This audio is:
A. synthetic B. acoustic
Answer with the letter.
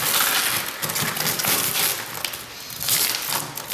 B